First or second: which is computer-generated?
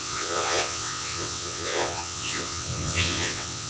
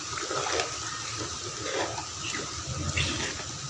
first